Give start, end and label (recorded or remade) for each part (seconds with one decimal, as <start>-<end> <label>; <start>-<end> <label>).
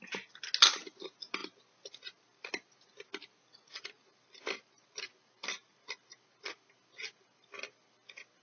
0.0-8.4 recorded